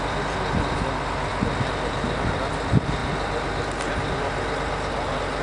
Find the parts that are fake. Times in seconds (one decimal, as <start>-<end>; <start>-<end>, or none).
none